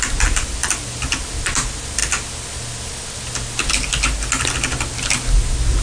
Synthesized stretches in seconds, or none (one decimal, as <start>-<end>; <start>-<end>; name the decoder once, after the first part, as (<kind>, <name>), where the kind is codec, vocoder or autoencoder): none

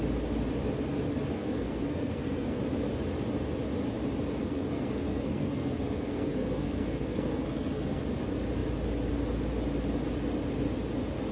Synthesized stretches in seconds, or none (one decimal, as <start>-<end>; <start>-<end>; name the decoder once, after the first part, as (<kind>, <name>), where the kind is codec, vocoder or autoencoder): 1.4-2.6 (codec, SNAC); 4.4-8.0

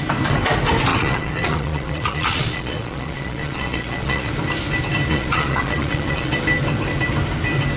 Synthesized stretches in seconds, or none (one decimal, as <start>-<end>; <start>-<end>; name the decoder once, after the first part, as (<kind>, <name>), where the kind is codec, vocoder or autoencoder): 0.9-4.3 (vocoder, Vocos); 5.1-6.3

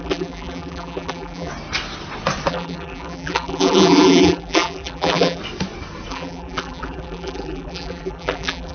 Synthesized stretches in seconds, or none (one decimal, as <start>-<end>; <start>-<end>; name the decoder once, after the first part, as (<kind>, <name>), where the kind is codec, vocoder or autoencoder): 0.0-1.5 (vocoder, BigVGAN v2); 2.5-5.4; 6.1-8.7